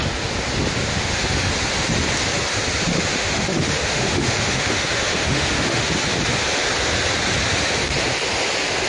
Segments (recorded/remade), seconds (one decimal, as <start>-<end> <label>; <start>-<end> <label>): 0.0-0.9 recorded; 0.9-1.5 remade; 1.5-2.9 recorded; 2.9-5.9 remade; 5.9-8.9 recorded